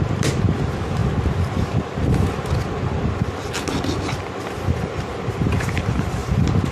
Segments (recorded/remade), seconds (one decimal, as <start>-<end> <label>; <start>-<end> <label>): 0.0-1.0 remade; 1.0-5.0 recorded; 5.0-6.7 remade